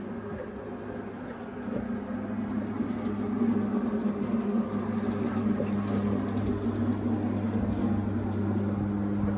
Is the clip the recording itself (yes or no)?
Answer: yes